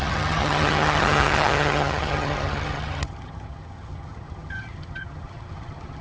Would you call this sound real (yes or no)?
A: no